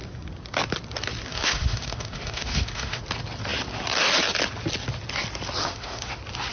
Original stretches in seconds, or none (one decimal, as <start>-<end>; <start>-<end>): 0.0-1.3; 3.0-5.6; 6.1-6.5